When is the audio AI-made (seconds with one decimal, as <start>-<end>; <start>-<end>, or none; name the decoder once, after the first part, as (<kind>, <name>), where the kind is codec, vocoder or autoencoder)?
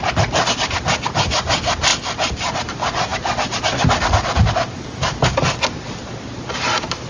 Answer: none